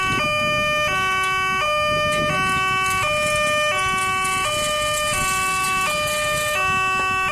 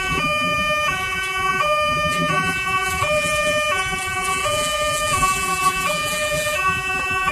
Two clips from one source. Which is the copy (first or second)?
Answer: second